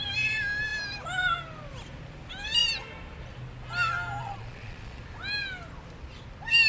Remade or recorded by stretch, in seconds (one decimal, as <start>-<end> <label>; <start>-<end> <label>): 0.0-4.2 recorded; 4.2-5.0 remade; 5.0-6.7 recorded